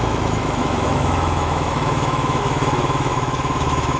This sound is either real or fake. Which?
fake